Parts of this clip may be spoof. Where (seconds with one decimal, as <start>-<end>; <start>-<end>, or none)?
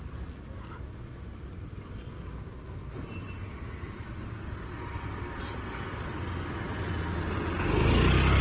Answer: none